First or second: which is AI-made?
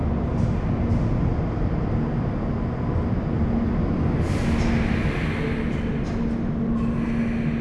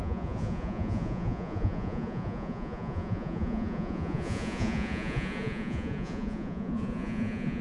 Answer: second